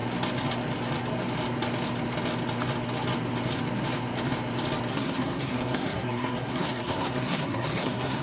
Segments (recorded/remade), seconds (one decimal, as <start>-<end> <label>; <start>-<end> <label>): 0.0-4.9 recorded; 4.9-8.2 remade